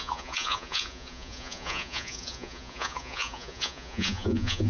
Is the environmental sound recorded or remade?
remade